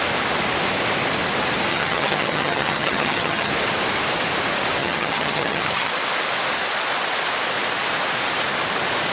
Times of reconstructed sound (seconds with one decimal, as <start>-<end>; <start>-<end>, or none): 1.7-3.5; 4.8-5.9

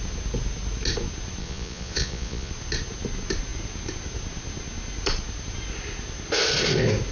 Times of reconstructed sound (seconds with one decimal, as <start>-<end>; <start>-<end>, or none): 1.4-2.5

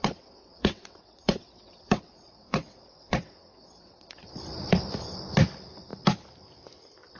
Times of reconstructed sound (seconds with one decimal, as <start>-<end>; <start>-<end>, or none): 0.0-4.3

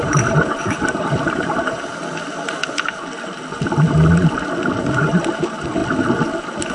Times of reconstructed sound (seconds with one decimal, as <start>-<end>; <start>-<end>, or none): 0.0-1.9; 4.8-5.8

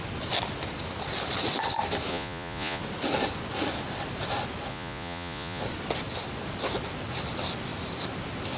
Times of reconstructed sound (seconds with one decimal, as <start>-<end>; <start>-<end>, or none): 2.1-2.8; 4.7-5.6

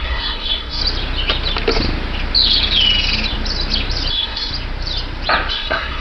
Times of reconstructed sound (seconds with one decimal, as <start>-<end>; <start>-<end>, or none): 0.0-0.8; 4.1-4.5; 5.5-6.0

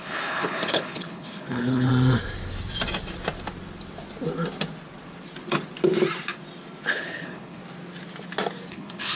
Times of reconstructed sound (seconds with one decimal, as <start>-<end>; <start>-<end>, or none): 0.0-1.9; 6.9-7.6; 8.7-9.1